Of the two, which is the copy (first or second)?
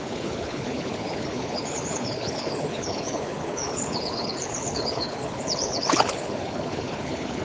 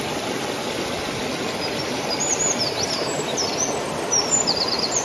first